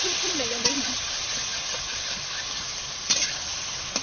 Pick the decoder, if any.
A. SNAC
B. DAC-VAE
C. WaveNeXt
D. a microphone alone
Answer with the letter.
D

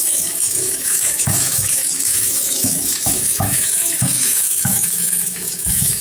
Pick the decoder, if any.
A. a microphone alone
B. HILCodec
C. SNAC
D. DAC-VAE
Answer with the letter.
D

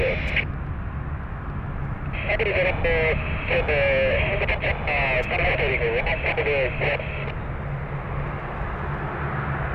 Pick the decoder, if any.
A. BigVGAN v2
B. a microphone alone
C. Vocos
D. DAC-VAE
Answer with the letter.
B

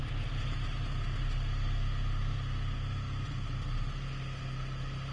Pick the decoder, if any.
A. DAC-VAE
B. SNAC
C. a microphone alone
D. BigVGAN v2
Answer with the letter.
C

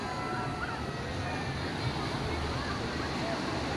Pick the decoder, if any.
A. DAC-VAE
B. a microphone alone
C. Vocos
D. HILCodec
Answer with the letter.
B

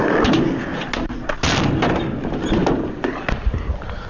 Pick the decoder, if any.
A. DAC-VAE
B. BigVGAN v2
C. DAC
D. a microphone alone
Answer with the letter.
D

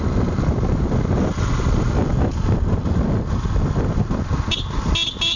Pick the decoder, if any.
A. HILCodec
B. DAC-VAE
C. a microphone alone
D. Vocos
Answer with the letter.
C